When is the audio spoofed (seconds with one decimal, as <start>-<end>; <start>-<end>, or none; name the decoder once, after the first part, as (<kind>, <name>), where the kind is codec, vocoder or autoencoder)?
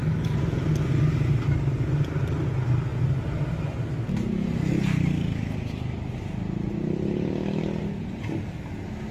none